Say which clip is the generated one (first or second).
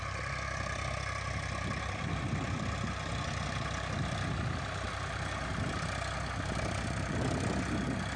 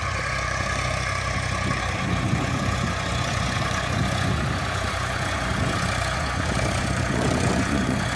second